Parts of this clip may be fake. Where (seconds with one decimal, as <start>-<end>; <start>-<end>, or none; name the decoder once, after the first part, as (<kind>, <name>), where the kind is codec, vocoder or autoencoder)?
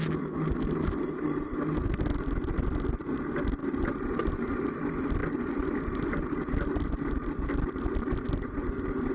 none